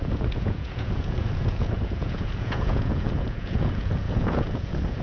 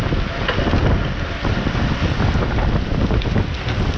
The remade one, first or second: first